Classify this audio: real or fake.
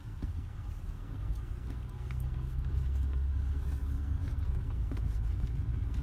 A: fake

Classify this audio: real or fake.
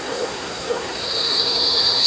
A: fake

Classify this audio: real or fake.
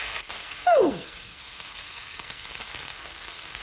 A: fake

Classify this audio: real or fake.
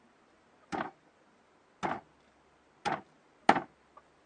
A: real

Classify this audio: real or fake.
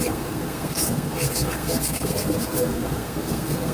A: fake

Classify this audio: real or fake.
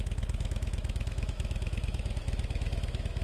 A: fake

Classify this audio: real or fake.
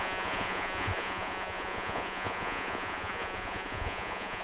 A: fake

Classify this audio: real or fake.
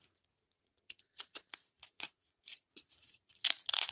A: fake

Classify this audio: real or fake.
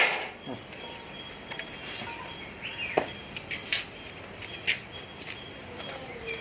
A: real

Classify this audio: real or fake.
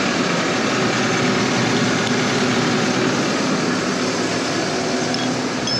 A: real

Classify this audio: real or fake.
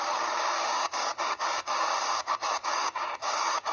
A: fake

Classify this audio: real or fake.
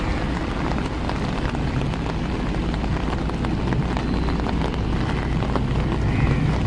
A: real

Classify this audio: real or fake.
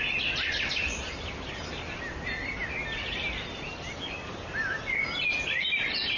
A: real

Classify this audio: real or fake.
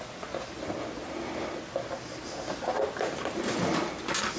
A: real